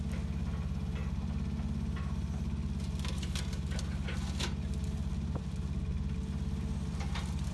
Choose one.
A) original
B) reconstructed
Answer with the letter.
A